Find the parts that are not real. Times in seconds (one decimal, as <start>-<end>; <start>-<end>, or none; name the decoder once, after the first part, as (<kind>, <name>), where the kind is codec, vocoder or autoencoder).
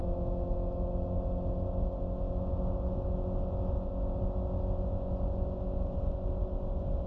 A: 0.0-0.9 (autoencoder, DAC-VAE)